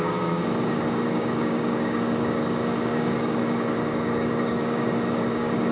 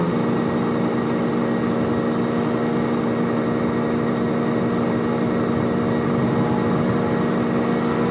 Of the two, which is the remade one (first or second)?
first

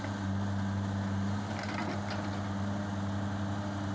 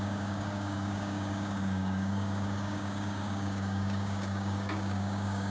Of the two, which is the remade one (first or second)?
second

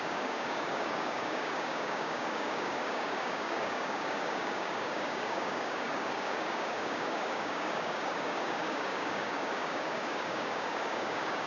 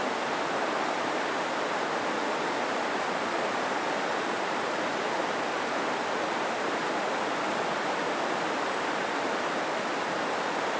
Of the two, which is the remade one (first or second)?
first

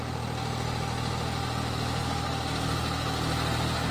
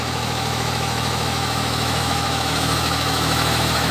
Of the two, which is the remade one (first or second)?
second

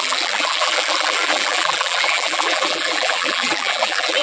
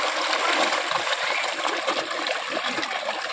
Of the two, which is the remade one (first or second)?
first